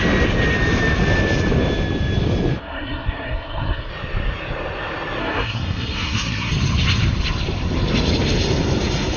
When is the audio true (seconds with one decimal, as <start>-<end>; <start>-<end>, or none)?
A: 0.0-2.6; 3.9-5.2; 6.5-9.2